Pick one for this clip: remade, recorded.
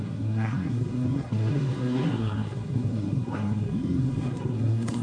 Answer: remade